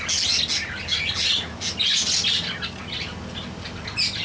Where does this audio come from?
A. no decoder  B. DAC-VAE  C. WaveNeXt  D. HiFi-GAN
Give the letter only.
A